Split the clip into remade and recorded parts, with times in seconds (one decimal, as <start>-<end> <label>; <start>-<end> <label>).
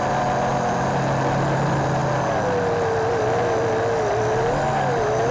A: 0.0-5.3 recorded